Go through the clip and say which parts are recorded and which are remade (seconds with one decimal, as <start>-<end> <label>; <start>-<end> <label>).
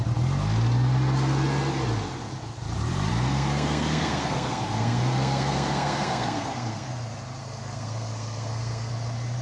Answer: 0.0-3.1 recorded; 3.1-6.9 remade; 6.9-7.4 recorded; 7.4-8.9 remade; 8.9-9.4 recorded